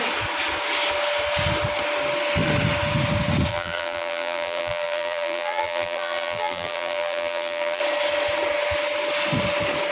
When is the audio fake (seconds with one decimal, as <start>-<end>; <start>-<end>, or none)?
3.5-7.8